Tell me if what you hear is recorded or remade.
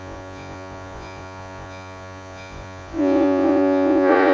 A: remade